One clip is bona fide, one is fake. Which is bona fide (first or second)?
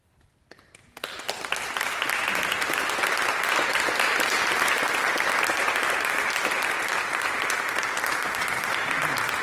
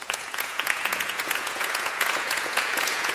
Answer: first